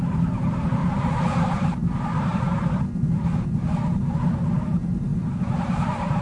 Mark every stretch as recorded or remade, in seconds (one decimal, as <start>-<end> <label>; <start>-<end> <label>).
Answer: 0.0-0.8 remade; 0.8-1.4 recorded; 1.4-2.3 remade; 2.3-4.5 recorded; 4.5-6.2 remade